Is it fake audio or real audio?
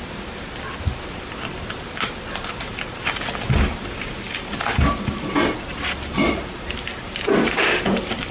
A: real